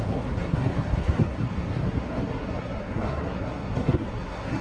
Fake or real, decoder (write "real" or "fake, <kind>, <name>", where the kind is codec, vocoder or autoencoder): fake, codec, SNAC